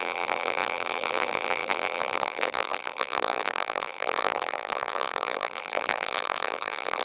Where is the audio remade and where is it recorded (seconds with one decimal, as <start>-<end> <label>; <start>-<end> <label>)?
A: 0.0-7.0 remade